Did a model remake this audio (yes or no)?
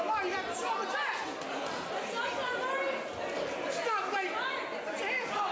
no